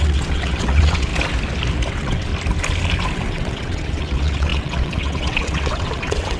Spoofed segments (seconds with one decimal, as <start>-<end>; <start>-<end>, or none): 0.0-1.1; 1.9-2.3; 3.1-6.4